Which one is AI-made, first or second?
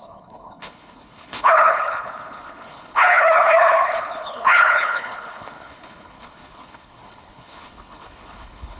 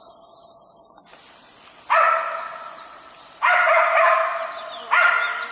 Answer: first